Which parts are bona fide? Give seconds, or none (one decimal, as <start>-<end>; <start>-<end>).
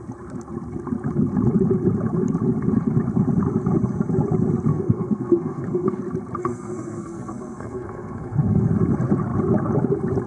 0.0-4.7; 6.0-6.4; 8.7-10.3